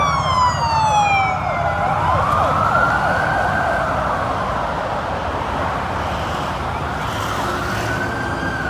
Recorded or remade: recorded